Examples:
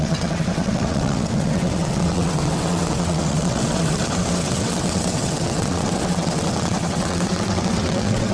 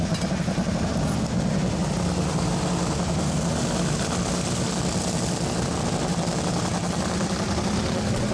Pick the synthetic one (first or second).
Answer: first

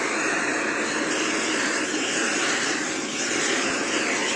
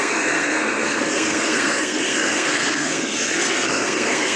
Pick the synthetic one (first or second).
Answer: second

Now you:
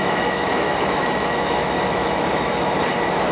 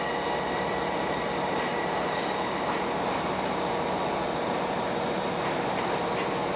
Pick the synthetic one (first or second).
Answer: first